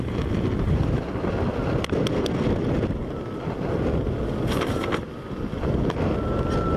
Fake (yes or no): no